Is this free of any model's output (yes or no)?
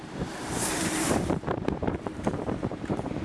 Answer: no